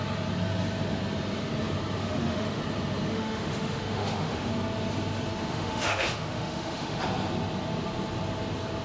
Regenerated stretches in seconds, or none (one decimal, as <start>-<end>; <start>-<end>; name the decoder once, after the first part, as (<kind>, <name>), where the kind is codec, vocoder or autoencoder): 2.0-2.6 (autoencoder, DAC-VAE); 3.1-4.5; 5.5-7.0